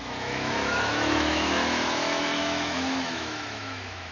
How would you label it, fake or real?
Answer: fake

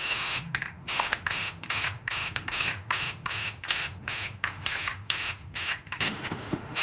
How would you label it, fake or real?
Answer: fake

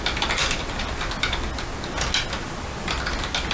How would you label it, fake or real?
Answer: real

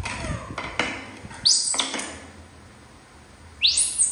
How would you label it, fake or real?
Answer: real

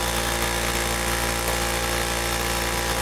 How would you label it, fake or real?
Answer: real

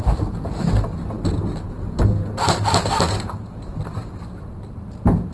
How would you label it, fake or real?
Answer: real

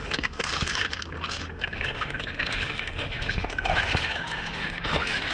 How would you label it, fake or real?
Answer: fake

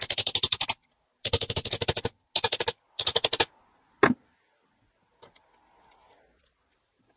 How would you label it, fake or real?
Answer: real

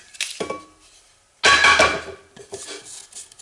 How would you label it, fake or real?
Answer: real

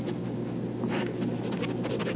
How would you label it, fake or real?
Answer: real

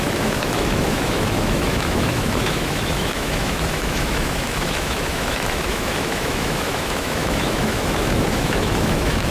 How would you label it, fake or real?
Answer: fake